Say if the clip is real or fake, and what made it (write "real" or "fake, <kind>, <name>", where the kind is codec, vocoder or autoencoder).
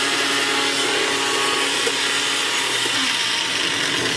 real